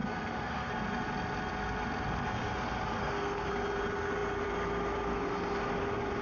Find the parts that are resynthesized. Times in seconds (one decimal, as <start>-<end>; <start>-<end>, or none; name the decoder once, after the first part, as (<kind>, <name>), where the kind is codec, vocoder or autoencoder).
0.0-0.7 (codec, SNAC); 3.0-3.5

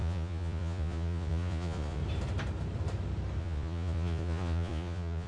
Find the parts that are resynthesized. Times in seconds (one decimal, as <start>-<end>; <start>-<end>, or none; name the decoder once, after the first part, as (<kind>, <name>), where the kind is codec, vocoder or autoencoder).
0.0-2.0 (vocoder, Vocos); 3.4-5.3

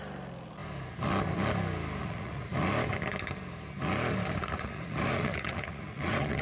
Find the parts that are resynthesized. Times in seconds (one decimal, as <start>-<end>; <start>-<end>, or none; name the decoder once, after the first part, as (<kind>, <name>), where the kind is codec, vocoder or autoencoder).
2.0-2.5 (vocoder, Vocos); 4.4-6.4

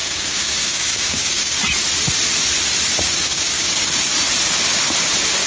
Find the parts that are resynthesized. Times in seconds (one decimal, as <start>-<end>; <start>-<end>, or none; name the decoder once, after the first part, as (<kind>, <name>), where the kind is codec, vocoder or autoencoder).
0.0-1.6 (codec, DAC); 3.0-4.1